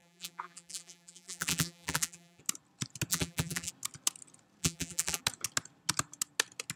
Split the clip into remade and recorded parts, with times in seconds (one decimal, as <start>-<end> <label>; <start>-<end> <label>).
0.0-2.4 remade; 2.4-3.1 recorded; 3.1-3.7 remade; 3.7-4.6 recorded; 4.6-5.2 remade; 5.2-6.8 recorded